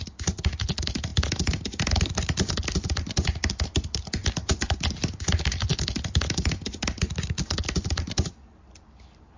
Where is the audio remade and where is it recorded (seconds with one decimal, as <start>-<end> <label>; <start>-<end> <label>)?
0.0-9.4 recorded

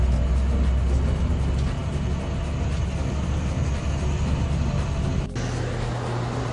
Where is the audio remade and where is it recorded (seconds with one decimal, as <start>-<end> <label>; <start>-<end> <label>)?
0.0-6.5 recorded

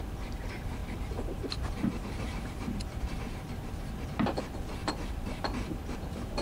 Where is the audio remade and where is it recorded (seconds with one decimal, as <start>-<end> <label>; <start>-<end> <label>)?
0.0-0.8 recorded; 0.8-3.0 remade; 3.0-4.8 recorded; 4.8-6.4 remade

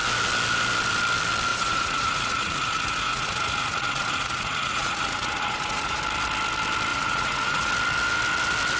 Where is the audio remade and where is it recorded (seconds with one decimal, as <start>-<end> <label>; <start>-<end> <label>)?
0.0-1.5 recorded; 1.5-6.0 remade; 6.0-6.9 recorded; 6.9-7.7 remade; 7.7-8.8 recorded

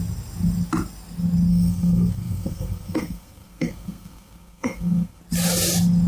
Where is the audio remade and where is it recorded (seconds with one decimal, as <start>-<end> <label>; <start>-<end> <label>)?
0.0-1.5 recorded; 1.5-5.2 remade; 5.2-6.1 recorded